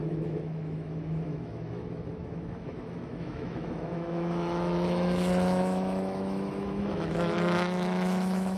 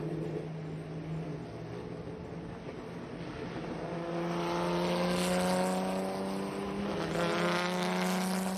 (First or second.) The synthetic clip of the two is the first